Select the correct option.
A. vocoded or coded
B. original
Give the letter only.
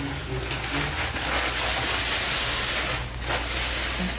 B